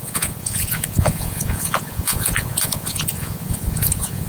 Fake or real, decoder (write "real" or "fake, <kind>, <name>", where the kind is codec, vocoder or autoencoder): fake, vocoder, Vocos